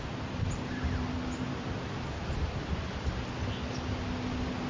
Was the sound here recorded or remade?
recorded